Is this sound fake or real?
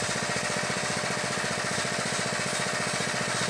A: real